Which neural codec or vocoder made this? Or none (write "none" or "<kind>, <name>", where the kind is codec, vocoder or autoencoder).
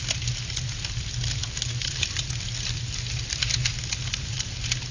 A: none